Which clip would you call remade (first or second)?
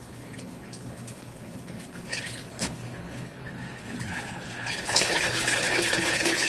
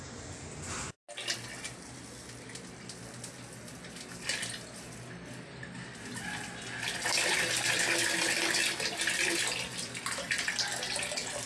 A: first